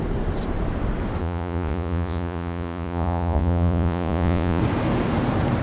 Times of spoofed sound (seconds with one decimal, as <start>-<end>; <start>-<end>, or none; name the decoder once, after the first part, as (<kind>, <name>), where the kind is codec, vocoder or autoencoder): 1.2-4.6 (vocoder, Vocos)